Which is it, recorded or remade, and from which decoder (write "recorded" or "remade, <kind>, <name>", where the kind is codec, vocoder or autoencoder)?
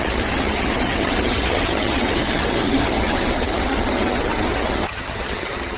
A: remade, vocoder, HiFi-GAN